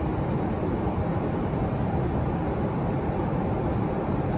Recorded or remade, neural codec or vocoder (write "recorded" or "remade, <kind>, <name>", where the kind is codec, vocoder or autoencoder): remade, vocoder, BigVGAN v2